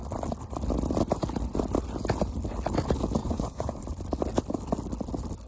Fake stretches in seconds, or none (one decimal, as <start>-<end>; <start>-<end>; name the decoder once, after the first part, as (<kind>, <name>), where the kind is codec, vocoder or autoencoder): 3.2-3.8 (vocoder, Vocos)